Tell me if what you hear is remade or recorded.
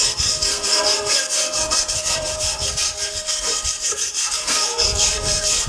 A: remade